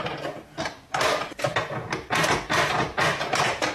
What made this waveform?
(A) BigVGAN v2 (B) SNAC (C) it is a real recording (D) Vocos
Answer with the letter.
C